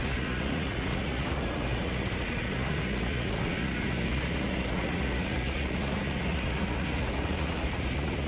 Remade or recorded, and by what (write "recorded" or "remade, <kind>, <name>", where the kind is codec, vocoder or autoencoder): remade, vocoder, Vocos